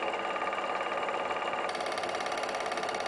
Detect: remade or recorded recorded